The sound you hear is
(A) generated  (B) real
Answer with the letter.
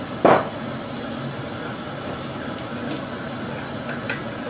B